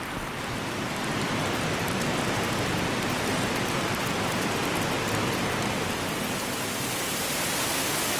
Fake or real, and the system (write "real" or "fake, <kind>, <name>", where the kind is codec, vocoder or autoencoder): real